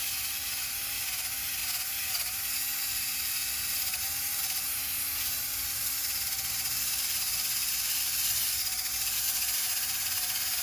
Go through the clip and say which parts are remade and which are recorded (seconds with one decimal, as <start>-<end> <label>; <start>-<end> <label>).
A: 0.0-10.6 recorded